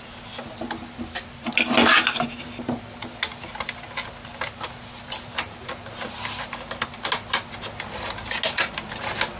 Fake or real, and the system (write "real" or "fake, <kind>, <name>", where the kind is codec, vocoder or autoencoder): real